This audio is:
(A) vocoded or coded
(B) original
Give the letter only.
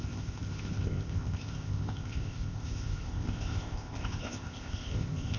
A